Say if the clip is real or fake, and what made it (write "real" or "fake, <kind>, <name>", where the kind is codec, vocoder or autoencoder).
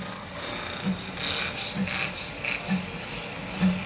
real